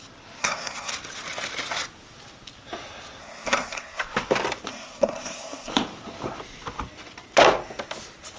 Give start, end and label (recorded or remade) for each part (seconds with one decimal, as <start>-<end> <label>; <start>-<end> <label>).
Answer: 0.0-0.4 recorded; 0.4-0.9 remade; 0.9-3.2 recorded; 3.2-4.0 remade; 4.0-4.7 recorded; 4.7-5.7 remade; 5.7-8.4 recorded

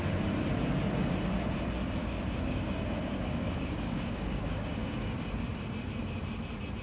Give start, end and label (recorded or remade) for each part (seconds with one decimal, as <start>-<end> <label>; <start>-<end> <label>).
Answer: 0.0-2.0 recorded; 2.0-5.2 remade; 5.2-6.8 recorded

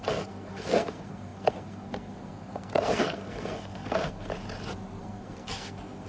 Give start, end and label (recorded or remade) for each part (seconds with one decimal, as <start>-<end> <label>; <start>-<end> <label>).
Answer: 0.0-4.3 remade; 4.3-5.0 recorded; 5.0-6.1 remade

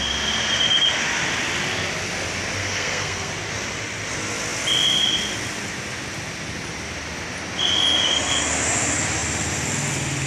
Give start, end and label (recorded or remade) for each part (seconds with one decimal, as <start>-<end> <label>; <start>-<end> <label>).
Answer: 0.0-2.6 recorded; 2.6-3.3 remade; 3.3-10.3 recorded

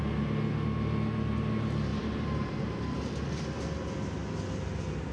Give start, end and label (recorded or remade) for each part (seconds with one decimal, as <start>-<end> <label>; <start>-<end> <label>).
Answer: 0.0-1.9 recorded; 1.9-2.8 remade; 2.8-5.1 recorded

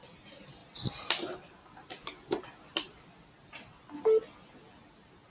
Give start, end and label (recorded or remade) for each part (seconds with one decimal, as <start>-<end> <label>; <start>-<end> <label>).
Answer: 0.0-0.6 recorded; 0.6-3.8 remade; 3.8-5.3 recorded

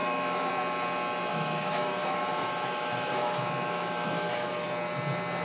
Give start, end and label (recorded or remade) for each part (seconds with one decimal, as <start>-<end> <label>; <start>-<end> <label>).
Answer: 0.0-0.5 remade; 0.5-1.3 recorded; 1.3-4.5 remade; 4.5-5.4 recorded